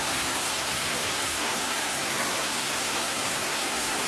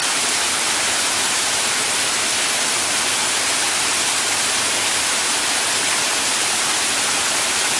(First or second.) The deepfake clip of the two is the first